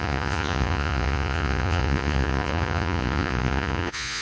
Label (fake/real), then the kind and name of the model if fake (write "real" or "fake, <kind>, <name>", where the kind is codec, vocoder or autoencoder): fake, vocoder, Vocos